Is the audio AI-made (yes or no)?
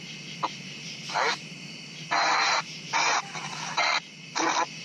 no